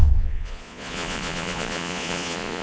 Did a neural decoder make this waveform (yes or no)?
yes